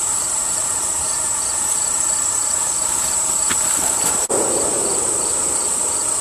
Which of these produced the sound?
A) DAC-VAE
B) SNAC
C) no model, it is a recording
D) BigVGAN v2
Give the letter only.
D